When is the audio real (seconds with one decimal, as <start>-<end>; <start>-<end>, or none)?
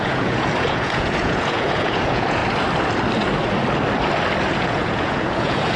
2.4-4.5